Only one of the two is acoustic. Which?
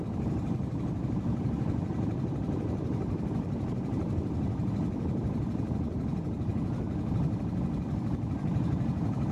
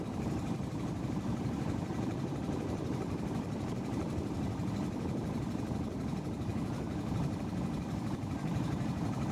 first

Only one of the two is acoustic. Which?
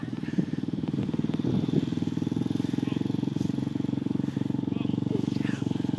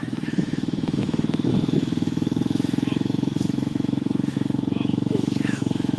first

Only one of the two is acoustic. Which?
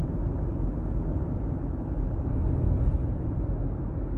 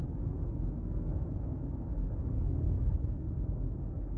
first